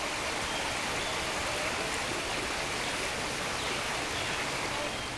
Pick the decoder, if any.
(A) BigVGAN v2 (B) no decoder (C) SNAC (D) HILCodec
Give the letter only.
B